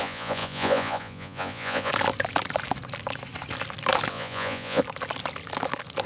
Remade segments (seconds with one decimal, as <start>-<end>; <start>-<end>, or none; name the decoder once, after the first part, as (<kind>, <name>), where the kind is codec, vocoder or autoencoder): 0.0-1.9 (vocoder, Vocos); 4.1-4.8